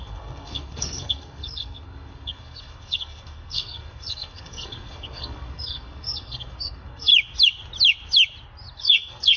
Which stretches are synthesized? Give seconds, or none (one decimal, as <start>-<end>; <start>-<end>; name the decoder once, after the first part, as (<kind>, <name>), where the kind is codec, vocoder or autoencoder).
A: 0.0-7.1 (codec, SNAC); 8.7-9.4